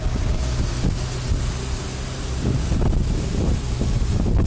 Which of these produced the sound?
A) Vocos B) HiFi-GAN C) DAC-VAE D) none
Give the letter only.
D